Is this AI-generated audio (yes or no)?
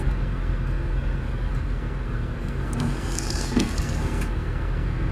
yes